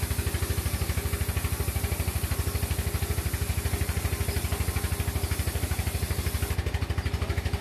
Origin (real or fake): real